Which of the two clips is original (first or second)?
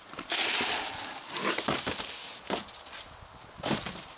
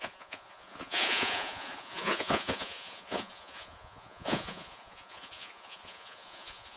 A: first